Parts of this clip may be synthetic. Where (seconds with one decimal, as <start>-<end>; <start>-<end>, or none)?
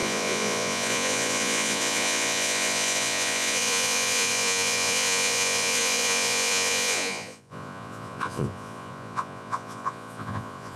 0.0-10.8